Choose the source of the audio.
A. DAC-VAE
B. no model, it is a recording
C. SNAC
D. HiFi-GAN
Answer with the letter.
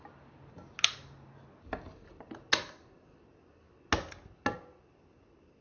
B